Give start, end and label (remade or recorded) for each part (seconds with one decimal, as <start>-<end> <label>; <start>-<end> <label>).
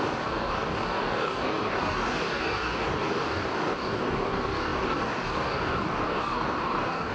0.0-7.1 remade